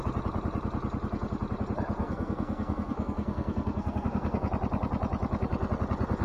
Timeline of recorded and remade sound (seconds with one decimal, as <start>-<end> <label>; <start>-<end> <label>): 0.0-2.0 recorded; 2.0-4.5 remade; 4.5-6.2 recorded